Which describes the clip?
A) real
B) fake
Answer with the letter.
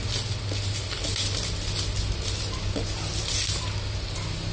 A